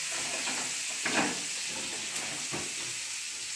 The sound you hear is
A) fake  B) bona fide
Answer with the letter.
B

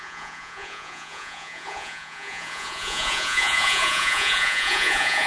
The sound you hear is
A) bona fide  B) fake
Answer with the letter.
B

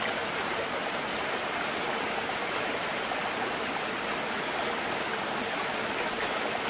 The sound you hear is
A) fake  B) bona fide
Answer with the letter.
B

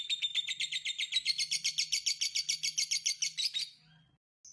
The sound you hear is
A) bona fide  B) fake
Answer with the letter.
A